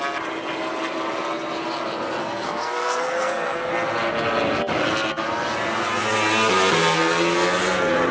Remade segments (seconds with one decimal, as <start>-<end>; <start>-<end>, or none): 2.2-3.7